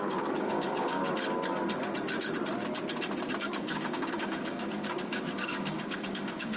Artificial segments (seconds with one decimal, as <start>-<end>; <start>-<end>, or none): 0.0-1.0; 3.4-6.6